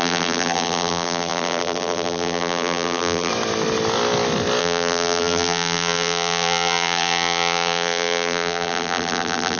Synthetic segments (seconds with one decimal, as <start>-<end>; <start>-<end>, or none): 0.0-3.3; 4.6-9.6

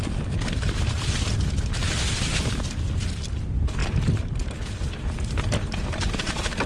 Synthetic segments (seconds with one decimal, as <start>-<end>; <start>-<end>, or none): none

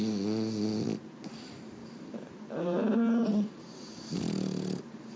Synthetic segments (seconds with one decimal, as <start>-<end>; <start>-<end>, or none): 1.8-5.2

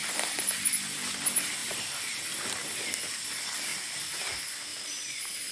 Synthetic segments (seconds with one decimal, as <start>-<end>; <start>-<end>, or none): 0.0-0.7; 1.6-2.7; 3.7-4.3; 4.7-5.5

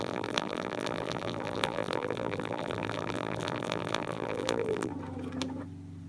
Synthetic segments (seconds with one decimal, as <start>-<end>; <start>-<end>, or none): 0.0-4.9

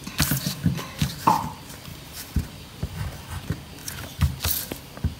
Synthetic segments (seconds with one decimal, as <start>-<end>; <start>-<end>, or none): 1.9-3.3

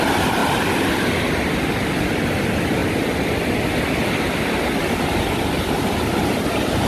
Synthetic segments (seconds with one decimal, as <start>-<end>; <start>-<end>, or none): none

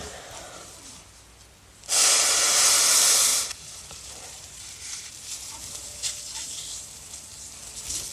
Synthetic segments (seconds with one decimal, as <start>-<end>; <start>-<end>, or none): 3.3-7.5